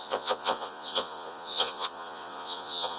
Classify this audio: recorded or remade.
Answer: remade